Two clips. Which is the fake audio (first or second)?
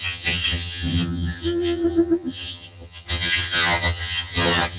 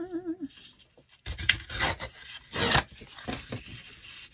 first